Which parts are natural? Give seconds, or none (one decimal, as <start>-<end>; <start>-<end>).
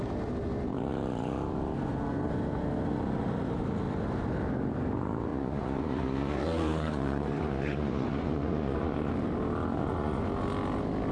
0.0-5.3; 9.1-9.7; 10.2-11.1